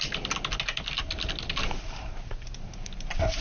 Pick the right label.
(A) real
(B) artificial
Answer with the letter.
A